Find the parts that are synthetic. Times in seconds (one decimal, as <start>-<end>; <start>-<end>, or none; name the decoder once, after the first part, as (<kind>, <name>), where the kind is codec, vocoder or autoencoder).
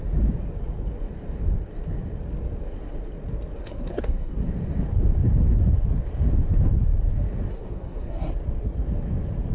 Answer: 3.6-4.4 (codec, SNAC); 7.5-8.3